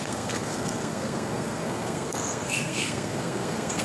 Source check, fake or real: fake